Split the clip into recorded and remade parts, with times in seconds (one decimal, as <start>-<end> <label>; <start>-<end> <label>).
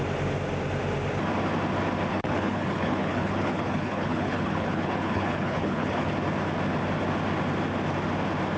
0.0-2.1 recorded; 2.1-6.1 remade; 6.1-8.6 recorded